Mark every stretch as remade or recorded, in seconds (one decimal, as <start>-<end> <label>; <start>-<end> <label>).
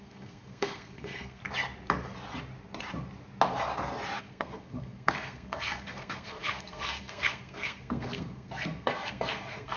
0.0-1.4 remade; 1.4-4.2 recorded; 4.2-9.8 remade